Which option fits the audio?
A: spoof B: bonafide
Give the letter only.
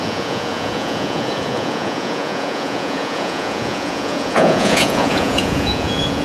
A